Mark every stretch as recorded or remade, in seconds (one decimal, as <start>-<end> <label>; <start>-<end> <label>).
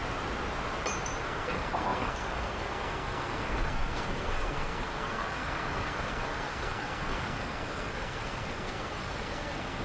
0.0-1.2 recorded; 1.2-9.8 remade